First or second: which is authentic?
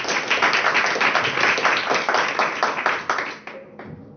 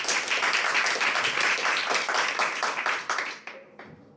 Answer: first